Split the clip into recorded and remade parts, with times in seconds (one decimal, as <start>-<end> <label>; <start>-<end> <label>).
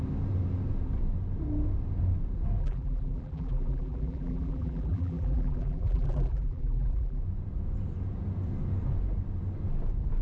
0.0-2.6 recorded; 2.6-7.2 remade; 7.2-10.2 recorded